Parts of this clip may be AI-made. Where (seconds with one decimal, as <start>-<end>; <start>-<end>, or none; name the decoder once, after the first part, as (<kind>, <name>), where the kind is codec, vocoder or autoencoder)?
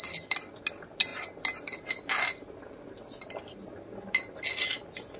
none